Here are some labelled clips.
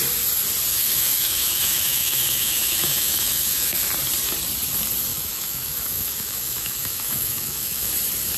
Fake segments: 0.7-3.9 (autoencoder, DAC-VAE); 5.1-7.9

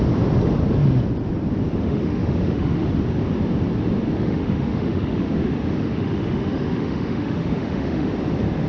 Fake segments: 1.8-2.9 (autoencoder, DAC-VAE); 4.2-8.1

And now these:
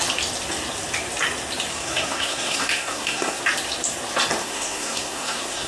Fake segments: 1.7-3.4 (codec, SNAC); 4.4-5.7